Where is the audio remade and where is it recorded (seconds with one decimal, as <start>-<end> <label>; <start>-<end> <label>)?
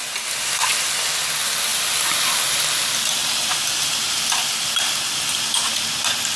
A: 0.0-1.7 recorded; 1.7-2.6 remade; 2.6-3.2 recorded; 3.2-5.1 remade; 5.1-6.4 recorded